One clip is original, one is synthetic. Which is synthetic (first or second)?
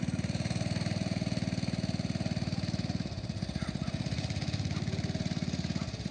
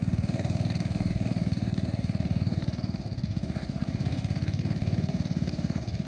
second